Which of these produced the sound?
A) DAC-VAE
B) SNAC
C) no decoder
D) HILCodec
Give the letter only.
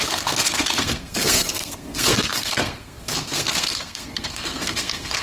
B